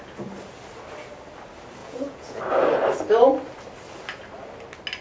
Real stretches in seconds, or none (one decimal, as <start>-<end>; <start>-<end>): 0.0-1.8; 2.4-5.0